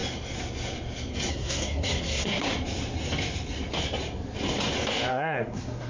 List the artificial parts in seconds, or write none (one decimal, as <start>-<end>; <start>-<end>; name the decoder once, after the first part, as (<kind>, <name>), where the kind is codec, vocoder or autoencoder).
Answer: 1.3-2.5 (codec, SNAC); 5.1-5.9